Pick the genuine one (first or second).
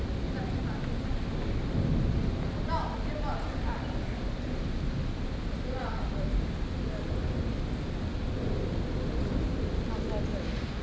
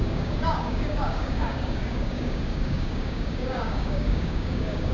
first